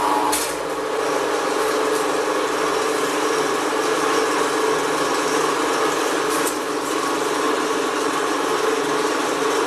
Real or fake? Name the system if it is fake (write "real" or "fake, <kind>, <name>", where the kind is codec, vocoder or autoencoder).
real